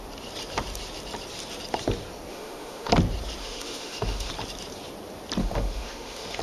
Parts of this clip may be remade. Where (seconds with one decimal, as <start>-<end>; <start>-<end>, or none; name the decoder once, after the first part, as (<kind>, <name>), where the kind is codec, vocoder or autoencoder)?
2.3-2.9 (autoencoder, DAC-VAE); 3.4-4.3; 5.4-6.4